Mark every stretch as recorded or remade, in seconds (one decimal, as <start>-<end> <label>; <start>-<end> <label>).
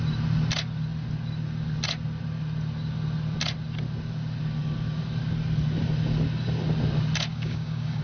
0.0-7.3 recorded; 7.3-8.0 remade